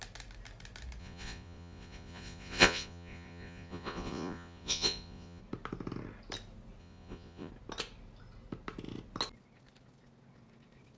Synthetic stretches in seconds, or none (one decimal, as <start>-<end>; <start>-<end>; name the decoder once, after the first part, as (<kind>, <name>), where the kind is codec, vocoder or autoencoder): 1.0-5.4 (vocoder, Vocos); 6.8-7.5